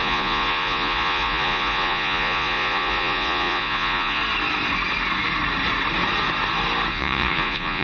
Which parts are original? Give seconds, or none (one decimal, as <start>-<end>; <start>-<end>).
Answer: 4.2-6.9